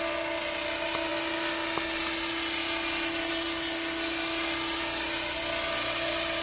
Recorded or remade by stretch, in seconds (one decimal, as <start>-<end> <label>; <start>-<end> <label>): 0.0-6.4 recorded

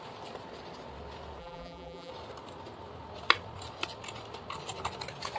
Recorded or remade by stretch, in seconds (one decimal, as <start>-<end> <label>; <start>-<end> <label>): 0.0-1.4 recorded; 1.4-2.1 remade; 2.1-5.4 recorded

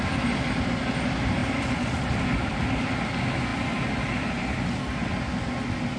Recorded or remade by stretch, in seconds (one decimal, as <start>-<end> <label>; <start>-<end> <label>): 0.0-1.4 recorded; 1.4-3.1 remade; 3.1-3.5 recorded; 3.5-5.1 remade; 5.1-6.0 recorded

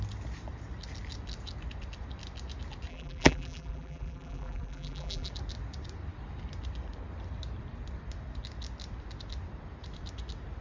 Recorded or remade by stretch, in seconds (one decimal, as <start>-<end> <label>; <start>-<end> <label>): 0.0-2.9 recorded; 2.9-5.3 remade; 5.3-10.6 recorded

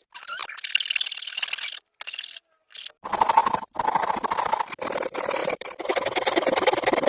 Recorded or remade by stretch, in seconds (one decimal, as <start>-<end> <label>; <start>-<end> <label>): 0.0-3.4 recorded; 3.4-4.1 remade; 4.1-5.4 recorded; 5.4-5.9 remade; 5.9-7.1 recorded